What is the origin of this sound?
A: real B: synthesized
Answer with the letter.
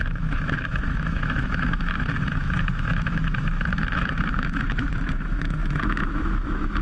B